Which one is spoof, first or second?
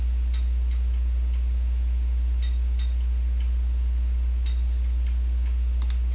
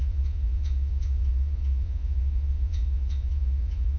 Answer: second